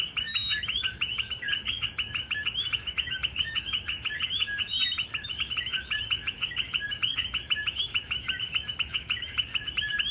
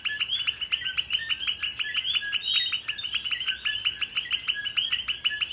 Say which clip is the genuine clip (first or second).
second